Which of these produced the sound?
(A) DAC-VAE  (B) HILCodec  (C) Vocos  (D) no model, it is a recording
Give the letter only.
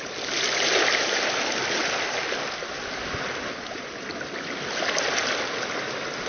D